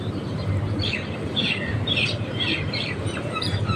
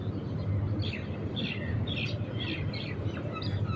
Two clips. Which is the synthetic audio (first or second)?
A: first